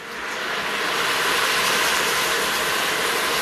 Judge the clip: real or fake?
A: real